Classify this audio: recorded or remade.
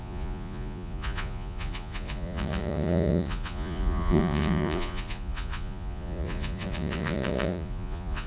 remade